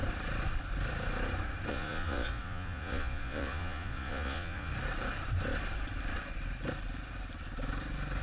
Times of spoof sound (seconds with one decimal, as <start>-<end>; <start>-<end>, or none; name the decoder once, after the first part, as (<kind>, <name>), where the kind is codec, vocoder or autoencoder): 1.7-4.7 (vocoder, Vocos)

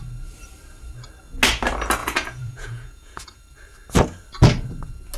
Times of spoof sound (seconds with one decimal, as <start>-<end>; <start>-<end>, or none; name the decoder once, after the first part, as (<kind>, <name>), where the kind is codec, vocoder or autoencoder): 2.0-3.4 (vocoder, Vocos)

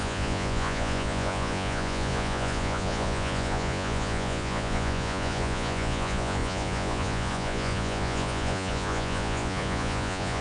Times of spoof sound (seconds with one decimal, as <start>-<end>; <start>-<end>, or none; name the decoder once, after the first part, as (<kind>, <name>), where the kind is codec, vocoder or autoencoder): 0.0-10.4 (vocoder, Vocos)

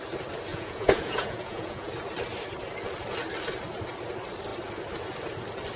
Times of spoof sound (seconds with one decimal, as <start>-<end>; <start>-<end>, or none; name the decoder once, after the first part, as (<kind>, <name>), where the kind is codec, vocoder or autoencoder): 0.5-1.9 (vocoder, Vocos)

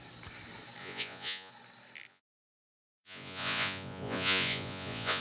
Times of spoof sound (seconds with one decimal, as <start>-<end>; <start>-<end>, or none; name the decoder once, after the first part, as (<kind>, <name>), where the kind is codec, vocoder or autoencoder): 0.8-1.5 (vocoder, Vocos); 2.1-5.2

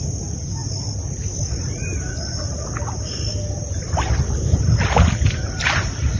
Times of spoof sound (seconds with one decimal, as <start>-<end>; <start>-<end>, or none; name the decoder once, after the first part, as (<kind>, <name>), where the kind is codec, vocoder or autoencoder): none